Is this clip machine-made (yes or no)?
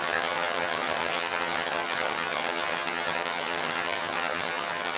yes